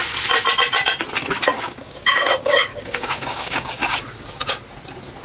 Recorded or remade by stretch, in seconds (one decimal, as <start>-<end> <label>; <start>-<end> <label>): 0.0-1.5 recorded; 1.5-4.6 remade; 4.6-5.2 recorded